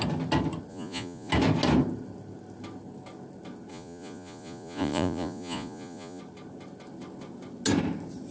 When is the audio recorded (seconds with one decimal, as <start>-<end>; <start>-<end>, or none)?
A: 0.0-0.7; 1.3-3.7; 6.2-8.3